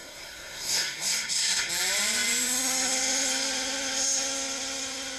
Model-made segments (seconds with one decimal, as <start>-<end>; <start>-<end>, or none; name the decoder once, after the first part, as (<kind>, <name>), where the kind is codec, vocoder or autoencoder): 0.0-1.7 (codec, SNAC)